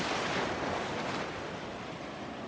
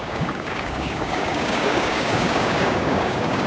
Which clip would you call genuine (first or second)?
first